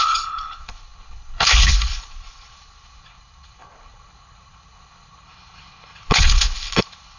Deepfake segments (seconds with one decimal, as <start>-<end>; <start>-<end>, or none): 0.0-7.2